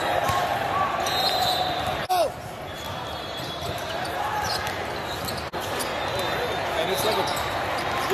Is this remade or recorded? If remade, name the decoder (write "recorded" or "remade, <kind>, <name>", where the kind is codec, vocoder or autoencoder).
recorded